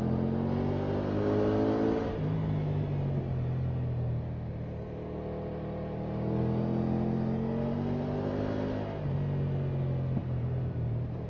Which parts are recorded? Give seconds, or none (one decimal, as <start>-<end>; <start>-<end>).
0.0-10.2